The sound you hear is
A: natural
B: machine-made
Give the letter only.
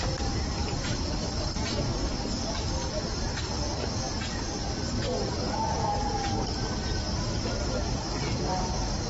A